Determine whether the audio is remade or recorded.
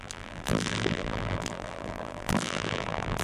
remade